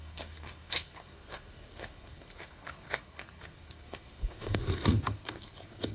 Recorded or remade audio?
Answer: remade